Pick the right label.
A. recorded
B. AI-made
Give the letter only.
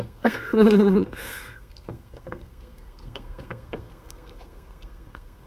B